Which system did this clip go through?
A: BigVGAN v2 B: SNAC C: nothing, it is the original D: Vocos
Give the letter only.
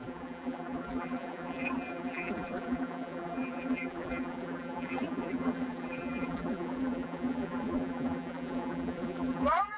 A